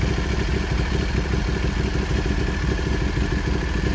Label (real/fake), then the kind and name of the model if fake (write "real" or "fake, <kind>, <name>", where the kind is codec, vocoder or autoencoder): real